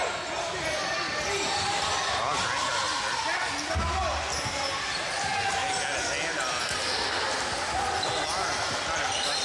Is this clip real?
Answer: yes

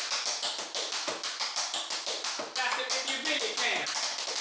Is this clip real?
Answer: yes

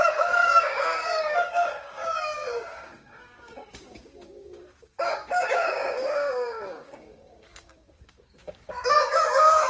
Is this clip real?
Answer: no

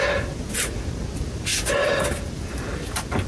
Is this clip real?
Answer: yes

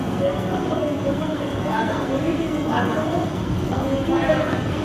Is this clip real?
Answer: no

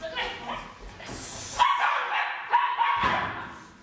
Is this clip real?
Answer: yes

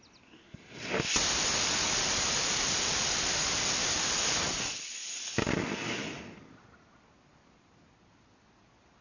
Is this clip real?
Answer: yes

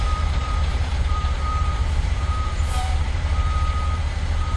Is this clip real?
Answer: no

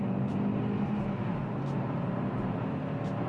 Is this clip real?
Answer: yes